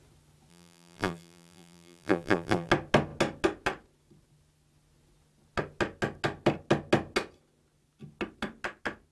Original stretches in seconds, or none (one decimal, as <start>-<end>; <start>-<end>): 0.0-0.5; 2.7-9.1